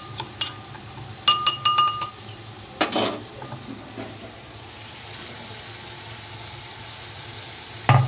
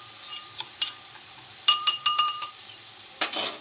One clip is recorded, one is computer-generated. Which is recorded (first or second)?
first